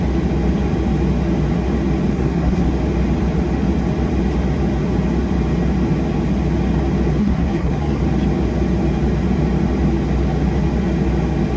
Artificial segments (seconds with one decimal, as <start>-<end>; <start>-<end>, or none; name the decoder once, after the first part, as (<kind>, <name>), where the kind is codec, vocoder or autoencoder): 2.1-2.7 (codec, SNAC); 7.2-8.0